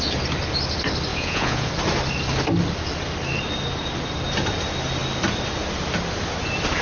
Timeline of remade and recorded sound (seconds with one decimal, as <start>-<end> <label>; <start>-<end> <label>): 0.0-1.1 recorded; 1.1-1.7 remade; 1.7-6.8 recorded